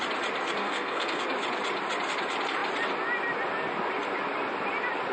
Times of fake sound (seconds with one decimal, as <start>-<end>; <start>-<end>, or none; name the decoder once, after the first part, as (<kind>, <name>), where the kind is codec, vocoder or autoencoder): 0.6-1.2 (codec, SNAC)